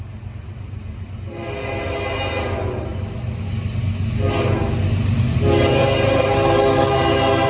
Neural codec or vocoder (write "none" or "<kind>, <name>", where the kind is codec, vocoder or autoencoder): none